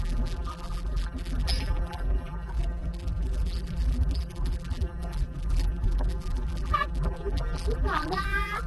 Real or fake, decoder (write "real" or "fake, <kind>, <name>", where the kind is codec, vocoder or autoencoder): fake, vocoder, BigVGAN v2